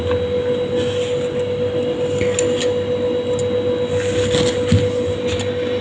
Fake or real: real